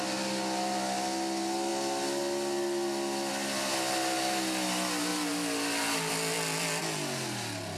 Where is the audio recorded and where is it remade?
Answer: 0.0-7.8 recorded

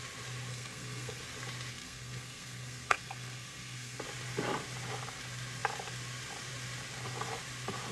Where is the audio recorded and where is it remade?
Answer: 0.0-0.5 recorded; 0.5-1.2 remade; 1.2-1.7 recorded; 1.7-4.0 remade; 4.0-7.9 recorded

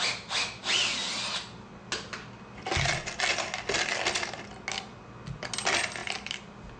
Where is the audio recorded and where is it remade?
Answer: 0.0-6.8 recorded

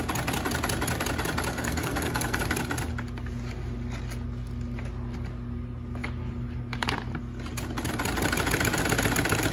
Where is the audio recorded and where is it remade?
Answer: 0.0-1.5 recorded; 1.5-2.4 remade; 2.4-9.5 recorded

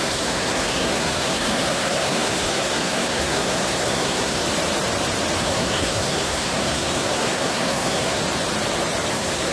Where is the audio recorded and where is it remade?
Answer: 0.0-4.4 remade; 4.4-5.4 recorded; 5.4-8.2 remade; 8.2-9.1 recorded; 9.1-9.5 remade